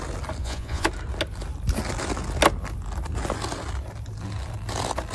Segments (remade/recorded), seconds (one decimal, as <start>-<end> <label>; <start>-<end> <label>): 0.0-0.4 recorded; 0.4-0.9 remade; 0.9-5.1 recorded